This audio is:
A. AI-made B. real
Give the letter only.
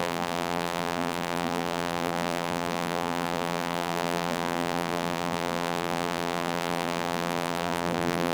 A